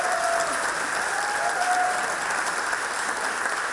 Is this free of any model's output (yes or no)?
yes